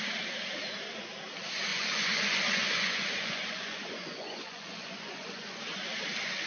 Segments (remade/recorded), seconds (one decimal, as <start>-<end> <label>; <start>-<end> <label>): 0.0-1.7 recorded; 1.7-5.6 remade; 5.6-6.5 recorded